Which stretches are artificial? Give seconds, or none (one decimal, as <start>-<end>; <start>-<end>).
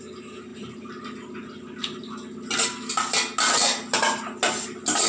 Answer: none